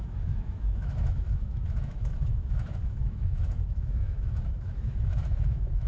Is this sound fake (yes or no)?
yes